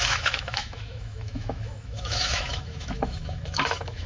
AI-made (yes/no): yes